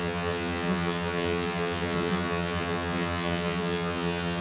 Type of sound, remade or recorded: remade